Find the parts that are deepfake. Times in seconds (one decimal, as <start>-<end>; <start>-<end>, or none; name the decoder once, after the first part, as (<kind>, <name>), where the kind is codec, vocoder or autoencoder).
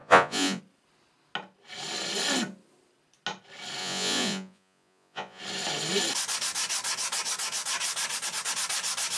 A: 0.0-0.6 (vocoder, Vocos); 3.8-5.4